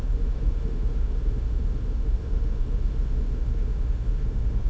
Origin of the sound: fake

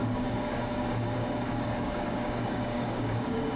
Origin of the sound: fake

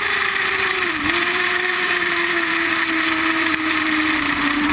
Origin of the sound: fake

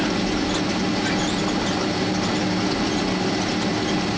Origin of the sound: real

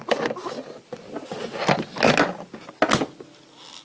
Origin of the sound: real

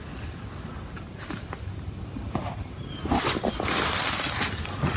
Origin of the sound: real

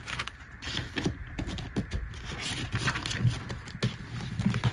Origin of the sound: real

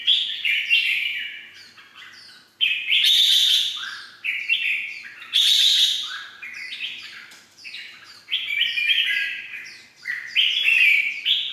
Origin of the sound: fake